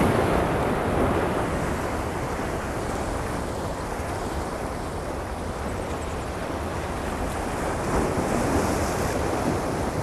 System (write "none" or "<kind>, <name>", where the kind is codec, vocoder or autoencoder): vocoder, BigVGAN v2